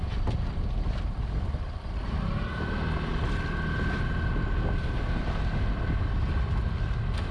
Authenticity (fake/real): real